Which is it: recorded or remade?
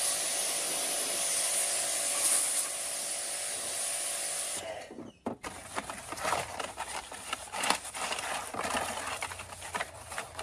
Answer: recorded